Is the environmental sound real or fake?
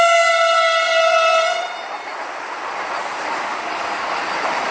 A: real